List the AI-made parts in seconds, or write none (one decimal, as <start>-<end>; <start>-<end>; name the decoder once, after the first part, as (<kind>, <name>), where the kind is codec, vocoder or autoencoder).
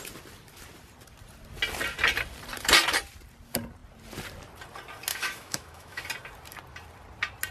5.1-6.0 (autoencoder, DAC-VAE)